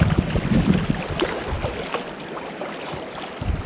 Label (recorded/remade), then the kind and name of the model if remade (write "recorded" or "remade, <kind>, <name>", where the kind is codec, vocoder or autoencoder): recorded